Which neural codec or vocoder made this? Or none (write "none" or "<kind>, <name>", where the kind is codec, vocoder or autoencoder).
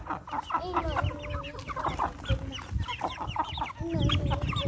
none